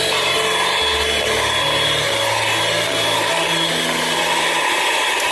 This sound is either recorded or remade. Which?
recorded